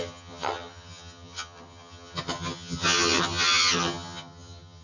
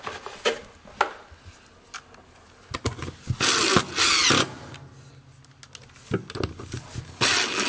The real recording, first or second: second